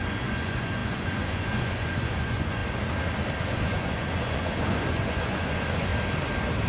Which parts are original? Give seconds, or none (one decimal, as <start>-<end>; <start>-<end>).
2.6-3.4; 5.9-6.7